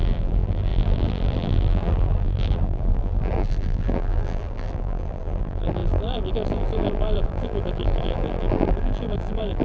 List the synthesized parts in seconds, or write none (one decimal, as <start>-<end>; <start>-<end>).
0.0-9.6